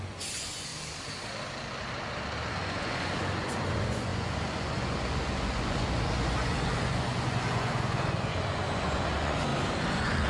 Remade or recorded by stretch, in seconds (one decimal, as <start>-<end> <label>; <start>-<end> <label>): 0.0-0.7 remade; 0.7-2.5 recorded; 2.5-10.3 remade